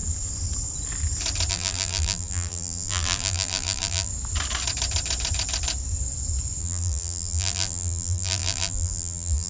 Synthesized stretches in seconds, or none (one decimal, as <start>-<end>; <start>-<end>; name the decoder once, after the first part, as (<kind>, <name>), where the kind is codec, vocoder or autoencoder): 1.5-4.1 (vocoder, BigVGAN v2); 6.6-9.5